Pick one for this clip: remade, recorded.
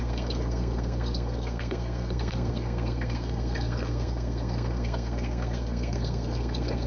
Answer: remade